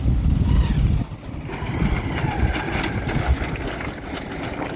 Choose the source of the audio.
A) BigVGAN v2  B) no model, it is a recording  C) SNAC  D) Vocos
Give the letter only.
B